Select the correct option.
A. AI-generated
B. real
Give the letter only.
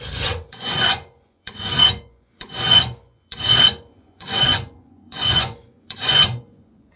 A